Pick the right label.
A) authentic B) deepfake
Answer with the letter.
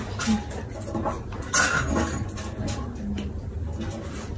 A